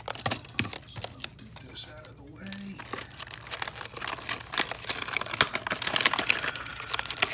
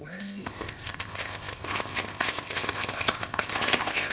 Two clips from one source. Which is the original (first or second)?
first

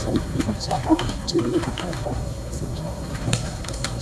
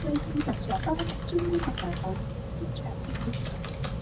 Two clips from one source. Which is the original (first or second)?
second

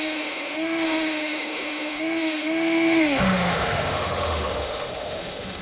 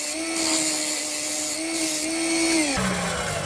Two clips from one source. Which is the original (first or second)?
second